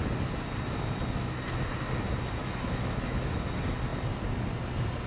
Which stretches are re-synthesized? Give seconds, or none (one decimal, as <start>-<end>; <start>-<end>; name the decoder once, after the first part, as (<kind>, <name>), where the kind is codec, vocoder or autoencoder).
2.4-3.4 (autoencoder, DAC-VAE)